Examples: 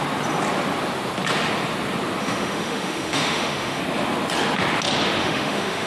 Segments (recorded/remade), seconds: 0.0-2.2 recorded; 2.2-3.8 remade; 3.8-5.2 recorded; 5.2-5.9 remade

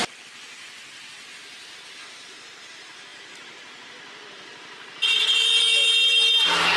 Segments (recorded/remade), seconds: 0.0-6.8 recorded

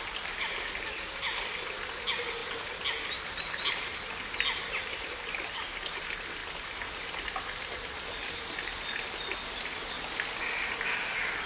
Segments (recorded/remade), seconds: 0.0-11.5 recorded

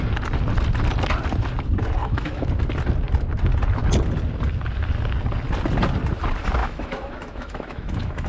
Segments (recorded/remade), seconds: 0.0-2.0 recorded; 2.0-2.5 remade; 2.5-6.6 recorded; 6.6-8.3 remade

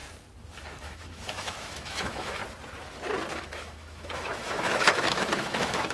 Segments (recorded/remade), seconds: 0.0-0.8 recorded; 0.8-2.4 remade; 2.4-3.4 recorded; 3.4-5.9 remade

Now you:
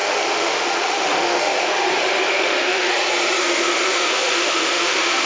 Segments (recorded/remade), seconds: 0.0-1.5 remade; 1.5-2.3 recorded; 2.3-2.9 remade; 2.9-3.4 recorded; 3.4-5.3 remade

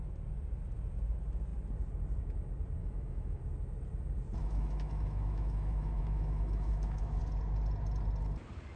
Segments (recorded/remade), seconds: 0.0-2.8 recorded; 2.8-3.4 remade; 3.4-4.4 recorded; 4.4-7.2 remade; 7.2-8.8 recorded